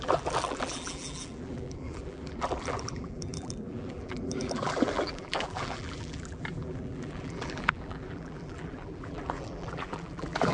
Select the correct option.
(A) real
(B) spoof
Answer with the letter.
B